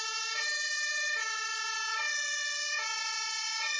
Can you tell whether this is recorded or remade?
remade